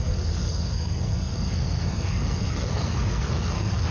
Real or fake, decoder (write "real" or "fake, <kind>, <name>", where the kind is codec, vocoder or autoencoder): fake, codec, SNAC